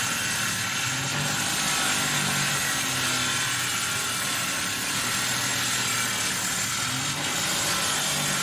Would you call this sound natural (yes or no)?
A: yes